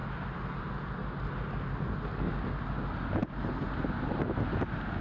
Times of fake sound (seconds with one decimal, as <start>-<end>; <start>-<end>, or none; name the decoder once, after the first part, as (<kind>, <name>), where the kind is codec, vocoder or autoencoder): none